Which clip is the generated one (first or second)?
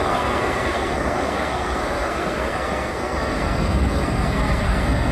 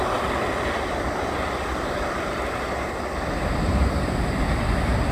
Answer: first